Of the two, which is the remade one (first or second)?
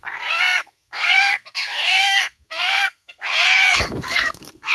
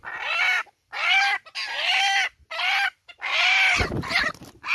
first